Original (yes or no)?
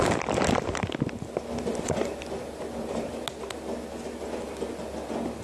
yes